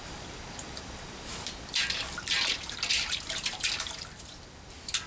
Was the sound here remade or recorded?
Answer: recorded